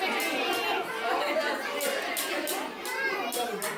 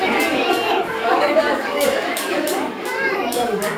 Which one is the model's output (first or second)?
second